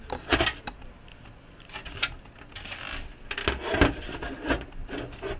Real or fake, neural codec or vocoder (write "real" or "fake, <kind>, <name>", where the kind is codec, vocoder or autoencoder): real